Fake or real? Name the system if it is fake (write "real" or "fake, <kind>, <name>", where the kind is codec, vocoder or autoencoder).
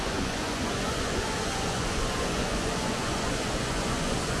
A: fake, vocoder, Vocos